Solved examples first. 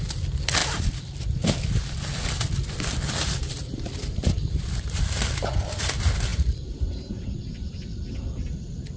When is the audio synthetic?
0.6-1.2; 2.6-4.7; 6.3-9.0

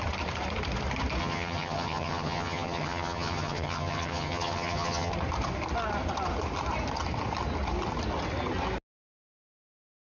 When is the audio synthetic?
1.2-5.1

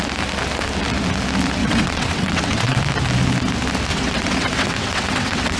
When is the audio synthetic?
1.6-2.8; 3.9-5.6